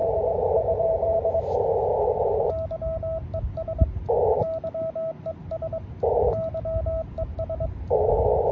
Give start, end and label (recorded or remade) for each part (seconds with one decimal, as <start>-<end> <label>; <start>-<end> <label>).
0.0-1.3 remade; 1.3-8.5 recorded